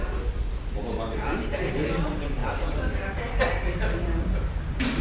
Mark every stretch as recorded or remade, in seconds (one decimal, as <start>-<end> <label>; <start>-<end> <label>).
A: 0.0-5.0 recorded